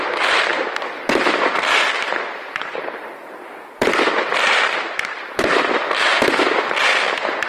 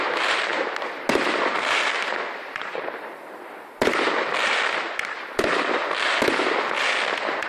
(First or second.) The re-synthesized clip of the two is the first